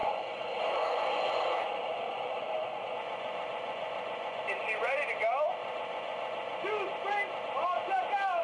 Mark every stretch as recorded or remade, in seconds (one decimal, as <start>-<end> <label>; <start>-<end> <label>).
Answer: 0.0-4.4 remade; 4.4-5.6 recorded; 5.6-6.7 remade; 6.7-8.4 recorded

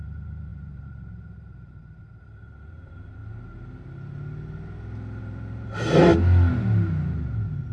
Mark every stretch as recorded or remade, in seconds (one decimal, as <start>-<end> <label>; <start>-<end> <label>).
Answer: 0.0-3.2 remade; 3.2-5.2 recorded; 5.2-6.1 remade; 6.1-7.7 recorded

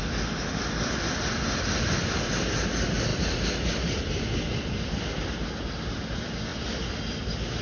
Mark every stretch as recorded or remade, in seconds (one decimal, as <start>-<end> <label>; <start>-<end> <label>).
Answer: 0.0-7.6 recorded

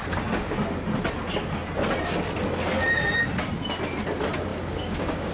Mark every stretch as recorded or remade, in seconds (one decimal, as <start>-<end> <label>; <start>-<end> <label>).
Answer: 0.0-4.5 recorded; 4.5-5.3 remade